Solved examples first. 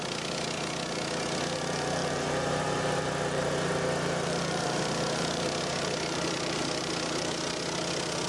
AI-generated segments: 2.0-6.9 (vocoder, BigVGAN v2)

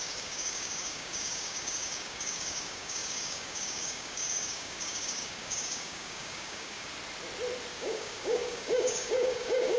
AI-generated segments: 0.0-6.9 (codec, DAC); 7.7-9.8

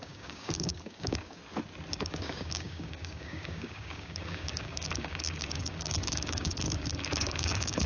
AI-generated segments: 0.0-1.4 (codec, DAC); 1.9-7.9

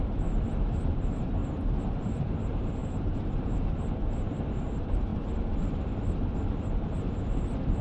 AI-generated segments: 0.0-1.4 (vocoder, BigVGAN v2); 2.0-7.8